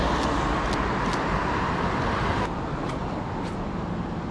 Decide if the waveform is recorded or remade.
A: recorded